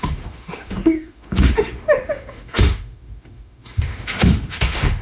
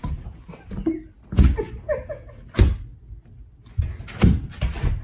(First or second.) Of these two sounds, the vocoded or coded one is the first